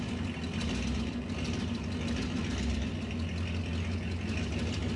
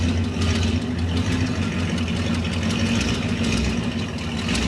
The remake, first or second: first